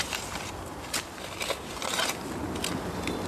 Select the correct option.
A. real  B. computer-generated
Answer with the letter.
B